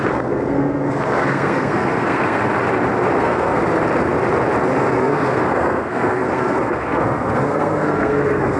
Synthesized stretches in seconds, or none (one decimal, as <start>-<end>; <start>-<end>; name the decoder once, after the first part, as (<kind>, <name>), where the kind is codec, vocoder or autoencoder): 0.0-2.4 (codec, SNAC); 3.2-3.6; 4.8-8.6